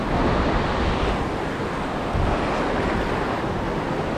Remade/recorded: recorded